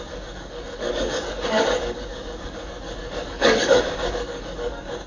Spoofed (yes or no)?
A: yes